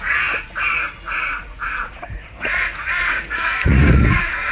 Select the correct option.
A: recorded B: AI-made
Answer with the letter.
B